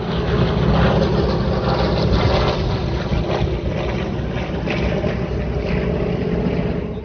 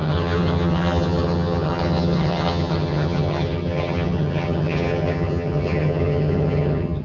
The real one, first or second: first